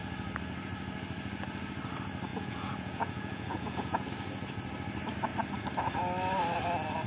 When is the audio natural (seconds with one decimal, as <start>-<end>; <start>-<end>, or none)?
0.0-2.3; 4.1-7.1